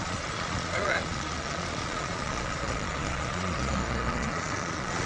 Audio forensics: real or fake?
fake